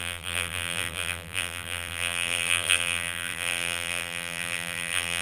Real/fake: fake